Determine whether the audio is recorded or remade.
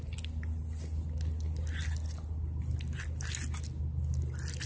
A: recorded